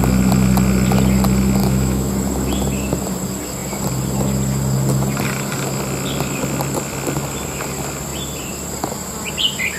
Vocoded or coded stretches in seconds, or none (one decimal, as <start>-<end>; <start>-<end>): 1.6-2.1